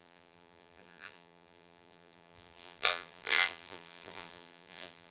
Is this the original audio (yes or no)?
no